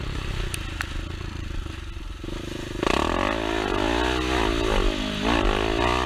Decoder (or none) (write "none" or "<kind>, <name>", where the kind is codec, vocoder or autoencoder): none